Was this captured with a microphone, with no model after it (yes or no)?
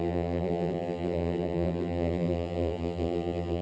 no